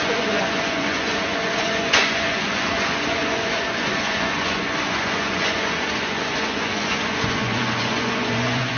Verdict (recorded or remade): remade